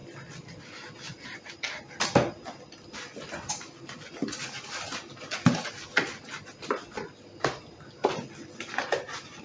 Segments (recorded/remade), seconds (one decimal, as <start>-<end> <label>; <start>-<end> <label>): 0.0-9.4 recorded